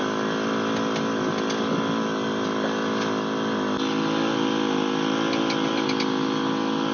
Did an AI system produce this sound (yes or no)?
no